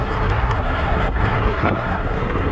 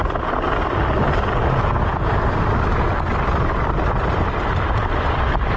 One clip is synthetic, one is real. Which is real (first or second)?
second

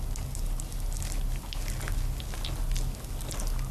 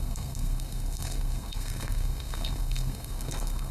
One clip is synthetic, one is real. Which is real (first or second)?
first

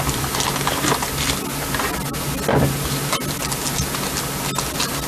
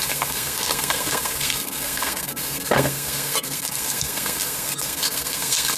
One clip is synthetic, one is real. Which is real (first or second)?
first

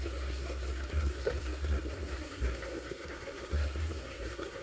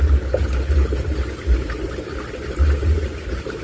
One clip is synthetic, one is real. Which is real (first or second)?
second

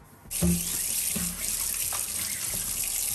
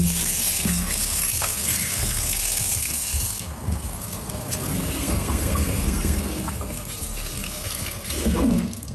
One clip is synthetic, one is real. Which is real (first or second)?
first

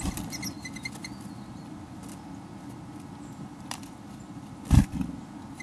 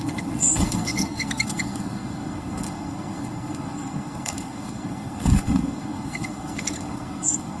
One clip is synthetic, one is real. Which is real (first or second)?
first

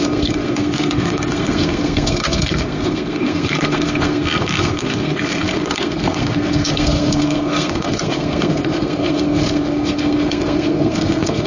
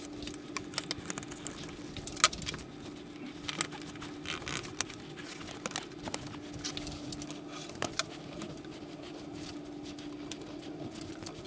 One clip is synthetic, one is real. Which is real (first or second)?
second